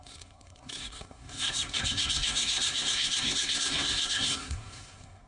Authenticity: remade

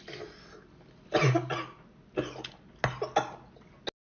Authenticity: recorded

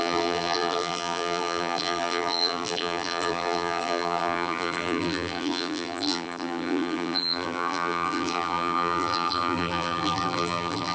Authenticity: remade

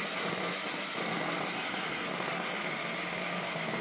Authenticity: recorded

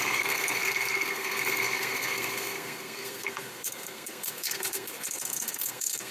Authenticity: remade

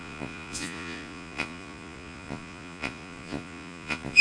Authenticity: remade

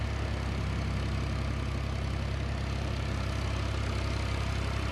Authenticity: recorded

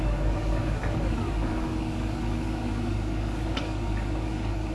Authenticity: remade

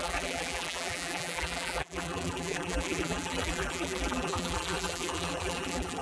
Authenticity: remade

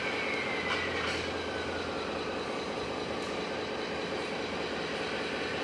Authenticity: recorded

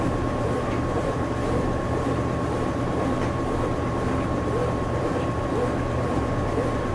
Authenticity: remade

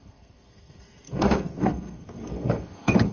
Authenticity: remade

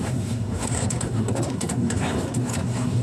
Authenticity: remade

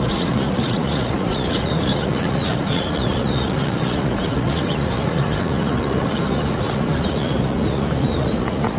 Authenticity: remade